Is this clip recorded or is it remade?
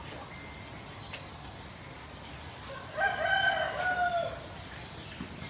recorded